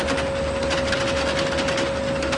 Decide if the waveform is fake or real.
real